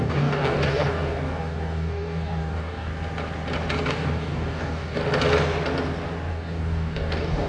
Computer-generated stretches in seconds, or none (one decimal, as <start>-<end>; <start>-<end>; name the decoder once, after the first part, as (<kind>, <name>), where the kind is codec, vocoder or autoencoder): 0.0-2.9 (codec, DAC); 3.9-5.0; 6.3-7.5